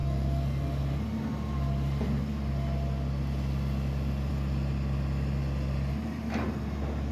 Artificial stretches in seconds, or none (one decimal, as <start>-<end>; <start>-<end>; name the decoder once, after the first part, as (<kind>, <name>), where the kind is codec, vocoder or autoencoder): none